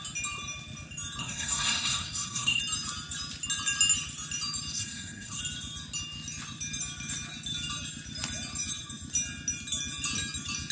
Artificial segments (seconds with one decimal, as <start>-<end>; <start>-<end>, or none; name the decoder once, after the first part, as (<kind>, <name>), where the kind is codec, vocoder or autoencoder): 1.2-2.6 (codec, SNAC); 4.7-5.4